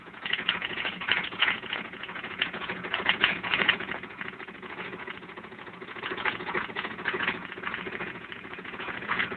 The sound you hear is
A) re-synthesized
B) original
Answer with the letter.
A